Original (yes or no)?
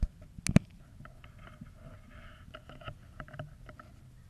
yes